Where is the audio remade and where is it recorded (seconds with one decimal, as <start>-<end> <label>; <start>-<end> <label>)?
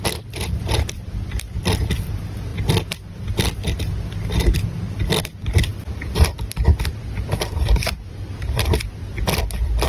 0.0-2.5 remade; 2.5-5.2 recorded; 5.2-9.9 remade